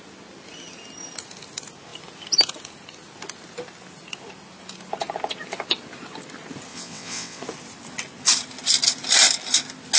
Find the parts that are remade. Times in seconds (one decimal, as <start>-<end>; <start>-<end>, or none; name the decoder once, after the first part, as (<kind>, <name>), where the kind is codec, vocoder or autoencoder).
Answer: 6.7-7.4 (vocoder, WaveNeXt)